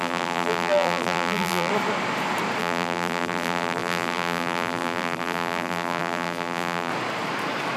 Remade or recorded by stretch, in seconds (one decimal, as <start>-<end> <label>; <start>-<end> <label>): 0.0-1.7 remade; 1.7-2.6 recorded; 2.6-6.9 remade; 6.9-7.8 recorded